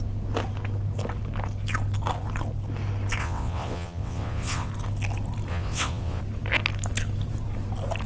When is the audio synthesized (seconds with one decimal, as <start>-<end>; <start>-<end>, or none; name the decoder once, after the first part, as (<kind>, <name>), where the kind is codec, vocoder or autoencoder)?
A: 3.2-4.7 (vocoder, WaveNeXt); 5.5-6.2